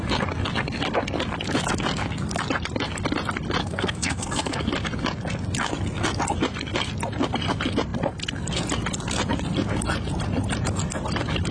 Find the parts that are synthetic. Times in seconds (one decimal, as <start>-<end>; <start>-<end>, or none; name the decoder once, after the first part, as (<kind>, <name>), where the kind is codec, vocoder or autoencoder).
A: 3.6-4.6 (codec, SNAC)